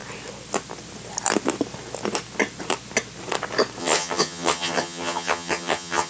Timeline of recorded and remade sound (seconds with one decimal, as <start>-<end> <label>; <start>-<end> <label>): 0.0-3.8 recorded; 3.8-6.1 remade